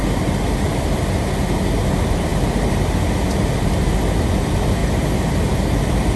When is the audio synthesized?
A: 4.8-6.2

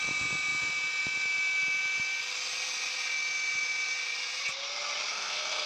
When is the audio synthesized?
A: 5.1-5.7